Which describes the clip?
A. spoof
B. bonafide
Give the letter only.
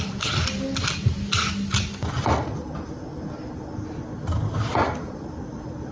B